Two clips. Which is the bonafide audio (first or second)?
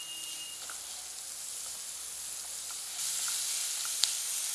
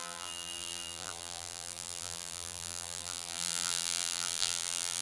first